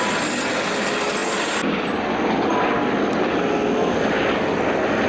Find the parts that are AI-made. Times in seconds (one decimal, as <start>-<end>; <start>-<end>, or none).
none